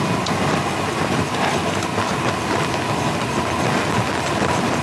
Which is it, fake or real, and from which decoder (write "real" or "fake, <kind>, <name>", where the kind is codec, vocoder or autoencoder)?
real